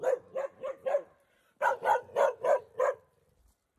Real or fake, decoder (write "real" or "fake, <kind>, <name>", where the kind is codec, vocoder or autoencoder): real